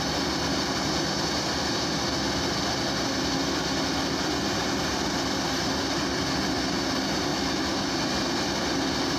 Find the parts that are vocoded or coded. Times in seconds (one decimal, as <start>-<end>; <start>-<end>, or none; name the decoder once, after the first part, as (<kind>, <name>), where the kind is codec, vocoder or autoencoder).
7.3-7.9 (autoencoder, DAC-VAE)